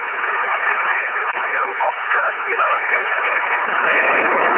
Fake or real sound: fake